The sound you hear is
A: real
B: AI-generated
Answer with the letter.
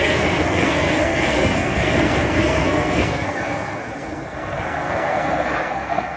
B